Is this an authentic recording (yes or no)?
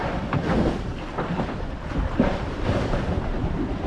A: no